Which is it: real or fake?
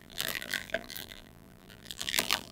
fake